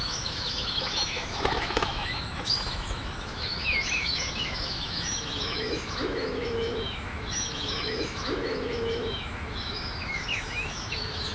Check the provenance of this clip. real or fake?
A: fake